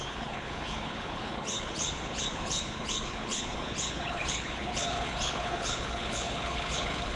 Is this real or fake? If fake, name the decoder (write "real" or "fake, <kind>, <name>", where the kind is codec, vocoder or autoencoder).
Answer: fake, codec, HILCodec